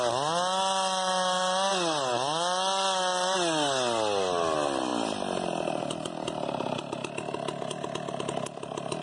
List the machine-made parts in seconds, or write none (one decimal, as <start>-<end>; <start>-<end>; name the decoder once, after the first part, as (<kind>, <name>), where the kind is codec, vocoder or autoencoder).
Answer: none